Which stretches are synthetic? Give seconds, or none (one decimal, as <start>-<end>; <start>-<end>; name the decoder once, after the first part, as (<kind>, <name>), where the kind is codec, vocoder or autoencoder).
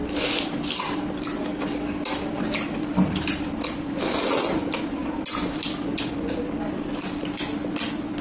none